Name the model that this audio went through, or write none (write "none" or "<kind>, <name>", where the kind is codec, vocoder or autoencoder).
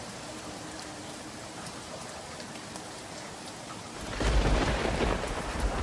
vocoder, BigVGAN v2